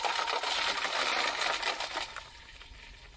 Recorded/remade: recorded